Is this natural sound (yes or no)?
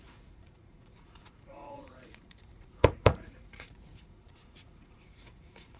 no